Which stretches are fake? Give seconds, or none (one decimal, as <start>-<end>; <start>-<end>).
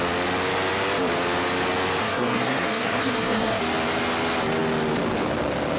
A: 2.0-3.6